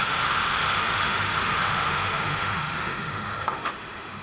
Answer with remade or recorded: remade